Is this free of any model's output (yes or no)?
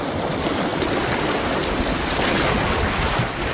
yes